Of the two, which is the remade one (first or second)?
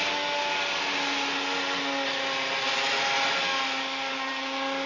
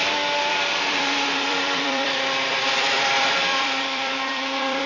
second